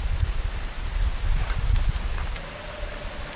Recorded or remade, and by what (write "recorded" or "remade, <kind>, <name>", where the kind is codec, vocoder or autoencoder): recorded